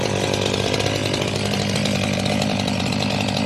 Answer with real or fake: fake